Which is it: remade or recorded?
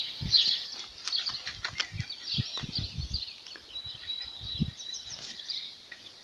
remade